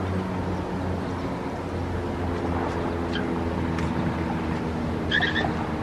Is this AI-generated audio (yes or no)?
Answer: no